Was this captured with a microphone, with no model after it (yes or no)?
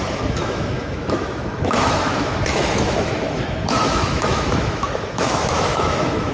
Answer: no